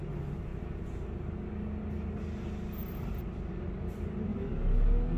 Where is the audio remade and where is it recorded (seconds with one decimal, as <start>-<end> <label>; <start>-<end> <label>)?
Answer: 0.0-4.3 recorded; 4.3-5.2 remade